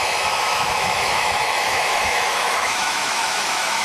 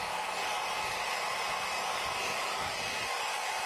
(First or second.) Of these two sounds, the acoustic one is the second